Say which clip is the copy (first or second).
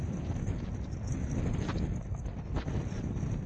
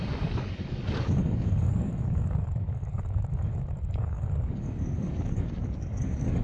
second